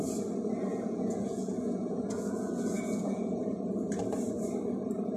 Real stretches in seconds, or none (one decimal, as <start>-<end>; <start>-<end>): 0.0-0.7; 3.4-5.2